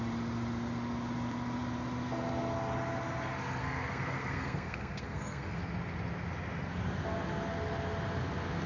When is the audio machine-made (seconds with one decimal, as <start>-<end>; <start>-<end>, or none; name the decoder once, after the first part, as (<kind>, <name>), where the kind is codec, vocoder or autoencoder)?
3.6-5.6 (codec, SNAC)